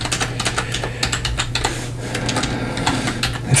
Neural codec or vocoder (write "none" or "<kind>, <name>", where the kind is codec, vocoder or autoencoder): none